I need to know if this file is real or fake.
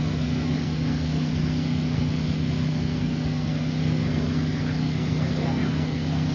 fake